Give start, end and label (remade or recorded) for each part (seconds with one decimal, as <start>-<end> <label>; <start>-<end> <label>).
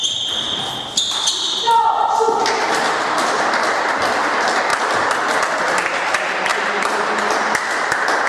0.0-8.3 recorded